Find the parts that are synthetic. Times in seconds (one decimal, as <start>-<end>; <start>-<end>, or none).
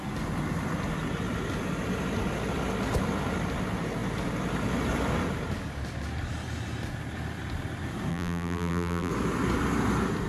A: 8.1-9.1